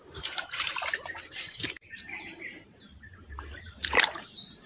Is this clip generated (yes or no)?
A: yes